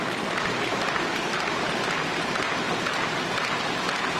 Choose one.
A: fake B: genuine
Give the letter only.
B